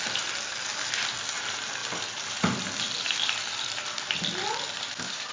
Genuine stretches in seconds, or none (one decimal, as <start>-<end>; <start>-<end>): 0.0-5.3